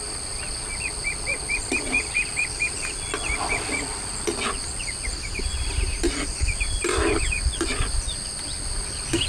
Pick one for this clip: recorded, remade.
recorded